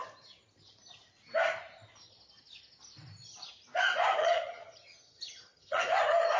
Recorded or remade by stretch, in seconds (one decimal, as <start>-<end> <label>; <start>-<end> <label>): 0.0-4.2 recorded; 4.2-5.8 remade; 5.8-6.4 recorded